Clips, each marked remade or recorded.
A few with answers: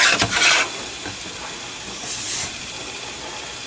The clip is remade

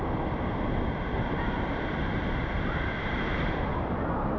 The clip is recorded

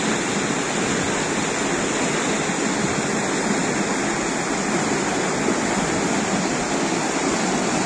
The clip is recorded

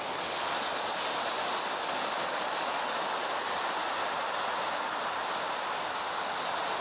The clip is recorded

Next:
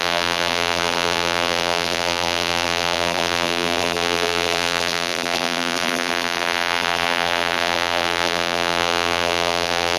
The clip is remade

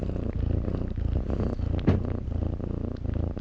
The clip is recorded